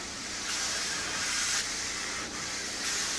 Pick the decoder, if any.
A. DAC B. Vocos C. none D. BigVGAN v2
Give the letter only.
C